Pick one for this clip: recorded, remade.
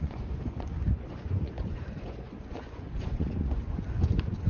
remade